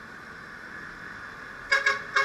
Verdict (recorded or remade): recorded